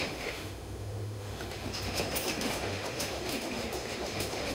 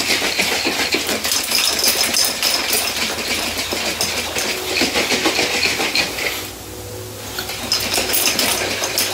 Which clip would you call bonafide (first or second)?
second